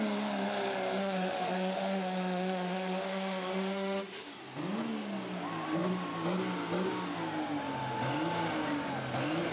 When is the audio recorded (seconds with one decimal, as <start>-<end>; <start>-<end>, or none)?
0.0-1.0; 4.3-9.5